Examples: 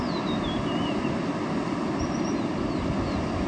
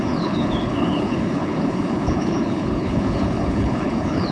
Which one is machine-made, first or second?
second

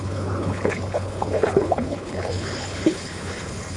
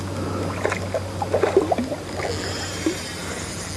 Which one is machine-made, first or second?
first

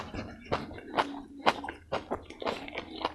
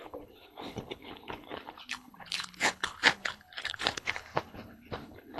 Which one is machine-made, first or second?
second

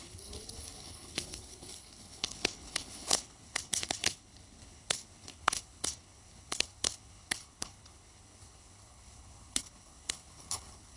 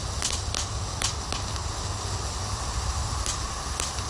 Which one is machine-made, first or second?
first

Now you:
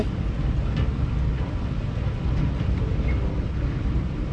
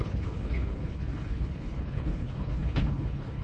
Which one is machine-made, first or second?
second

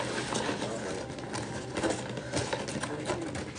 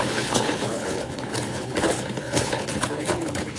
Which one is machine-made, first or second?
second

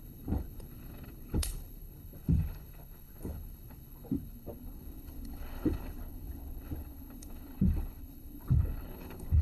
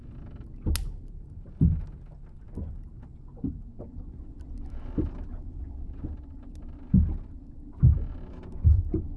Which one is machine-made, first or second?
first